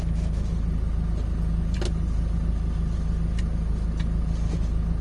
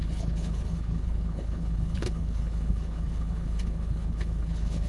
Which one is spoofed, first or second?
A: second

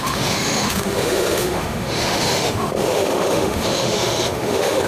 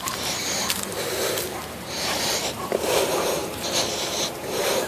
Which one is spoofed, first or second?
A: first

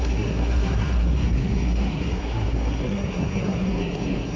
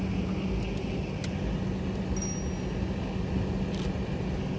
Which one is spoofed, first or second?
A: first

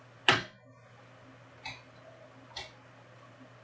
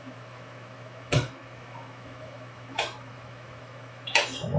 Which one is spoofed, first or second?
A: second